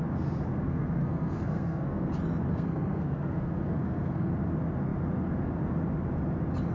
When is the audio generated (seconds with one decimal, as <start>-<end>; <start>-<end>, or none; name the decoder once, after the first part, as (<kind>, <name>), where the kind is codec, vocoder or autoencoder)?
0.5-2.1 (codec, SNAC); 2.5-4.3